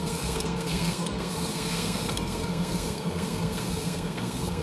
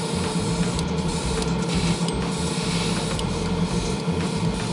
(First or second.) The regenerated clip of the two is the first